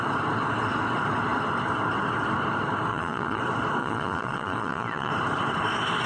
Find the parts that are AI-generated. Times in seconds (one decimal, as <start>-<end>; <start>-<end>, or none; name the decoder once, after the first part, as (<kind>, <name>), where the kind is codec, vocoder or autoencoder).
2.9-3.4 (vocoder, Vocos); 3.8-5.1